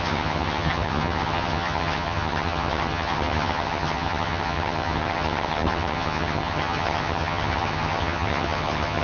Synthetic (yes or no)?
yes